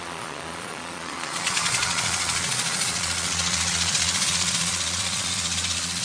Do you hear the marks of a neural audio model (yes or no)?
yes